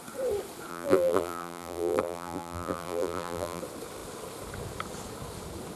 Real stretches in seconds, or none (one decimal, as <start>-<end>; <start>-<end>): 0.0-0.7; 3.6-5.8